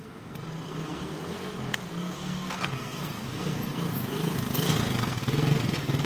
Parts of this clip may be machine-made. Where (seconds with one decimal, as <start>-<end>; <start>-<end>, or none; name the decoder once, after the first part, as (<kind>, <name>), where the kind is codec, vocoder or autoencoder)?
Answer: 0.0-6.0 (codec, SNAC)

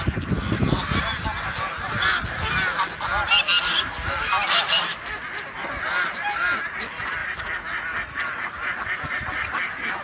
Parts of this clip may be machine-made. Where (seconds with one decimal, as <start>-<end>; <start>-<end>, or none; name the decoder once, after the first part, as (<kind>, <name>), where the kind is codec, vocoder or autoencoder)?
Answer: none